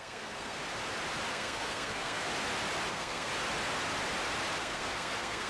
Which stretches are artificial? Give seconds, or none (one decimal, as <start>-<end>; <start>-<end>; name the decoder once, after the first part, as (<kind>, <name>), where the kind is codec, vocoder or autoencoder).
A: 0.0-0.6 (codec, SNAC); 1.3-2.3; 2.9-3.3; 4.6-5.5